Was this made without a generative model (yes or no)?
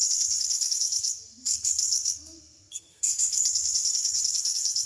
no